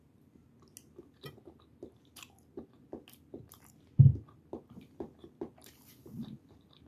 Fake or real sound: real